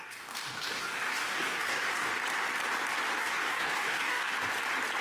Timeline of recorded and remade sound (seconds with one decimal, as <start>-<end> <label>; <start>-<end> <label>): 0.0-2.1 remade; 2.1-3.2 recorded; 3.2-4.3 remade; 4.3-5.0 recorded